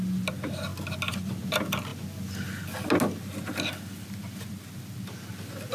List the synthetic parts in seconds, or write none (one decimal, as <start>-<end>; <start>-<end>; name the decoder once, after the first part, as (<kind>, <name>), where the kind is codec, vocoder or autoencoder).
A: none